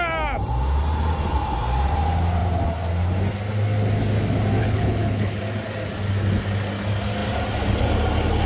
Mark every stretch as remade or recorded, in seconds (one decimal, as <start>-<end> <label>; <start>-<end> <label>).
0.0-4.6 recorded; 4.6-5.4 remade; 5.4-8.5 recorded